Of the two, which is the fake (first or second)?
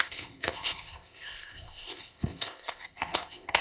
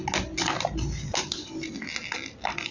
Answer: first